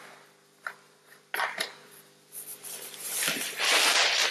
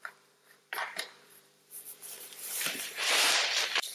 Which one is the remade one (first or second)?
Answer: second